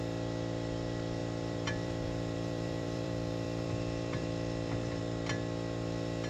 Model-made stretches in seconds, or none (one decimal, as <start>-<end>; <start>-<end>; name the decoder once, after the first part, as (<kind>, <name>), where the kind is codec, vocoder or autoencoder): 1.2-5.0 (vocoder, BigVGAN v2)